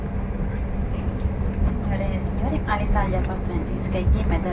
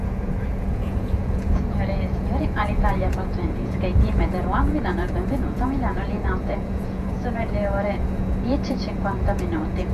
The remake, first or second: second